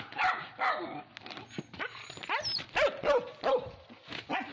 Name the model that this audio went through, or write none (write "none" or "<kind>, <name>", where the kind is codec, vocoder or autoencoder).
none